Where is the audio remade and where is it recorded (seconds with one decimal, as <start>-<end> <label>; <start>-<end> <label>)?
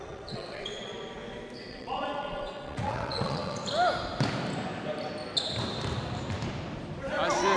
0.0-0.9 remade; 0.9-1.7 recorded; 1.7-3.6 remade; 3.6-7.6 recorded